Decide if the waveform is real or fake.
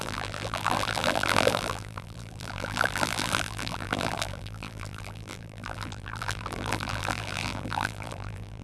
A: fake